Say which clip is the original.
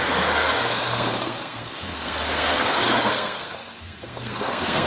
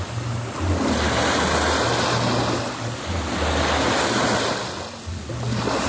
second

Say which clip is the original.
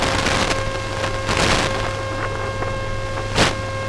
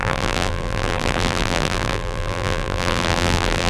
first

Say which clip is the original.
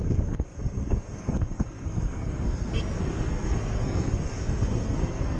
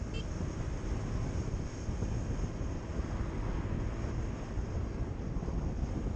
second